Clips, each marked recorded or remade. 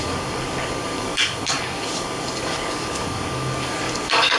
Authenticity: remade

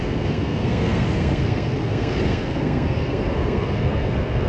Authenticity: remade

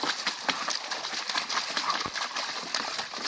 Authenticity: recorded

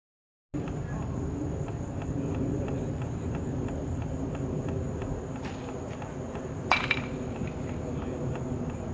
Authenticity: recorded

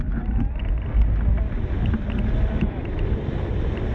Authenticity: recorded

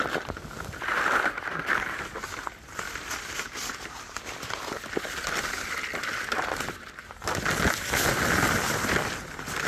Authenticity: recorded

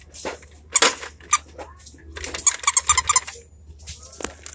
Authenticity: recorded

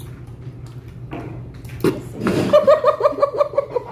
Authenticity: recorded